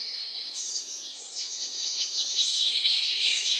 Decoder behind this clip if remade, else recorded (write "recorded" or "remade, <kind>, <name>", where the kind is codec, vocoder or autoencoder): remade, codec, SNAC